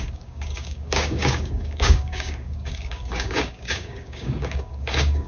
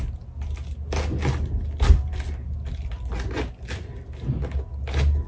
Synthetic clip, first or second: first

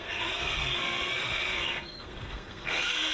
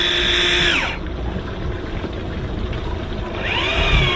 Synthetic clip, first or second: first